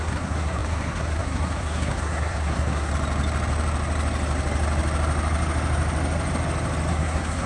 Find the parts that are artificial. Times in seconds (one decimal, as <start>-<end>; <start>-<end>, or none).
0.0-2.9; 6.9-7.5